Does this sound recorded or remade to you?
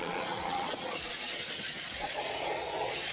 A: remade